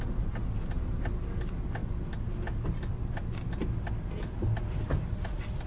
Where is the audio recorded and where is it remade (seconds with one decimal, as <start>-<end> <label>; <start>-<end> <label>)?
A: 0.0-5.7 recorded